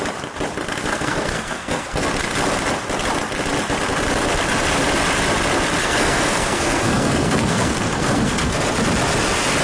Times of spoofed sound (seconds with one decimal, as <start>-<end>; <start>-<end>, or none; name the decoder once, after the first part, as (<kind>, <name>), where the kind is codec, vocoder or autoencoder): 0.9-2.0 (codec, SNAC); 5.8-8.6